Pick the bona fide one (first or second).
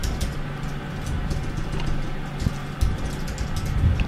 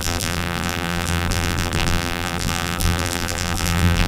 first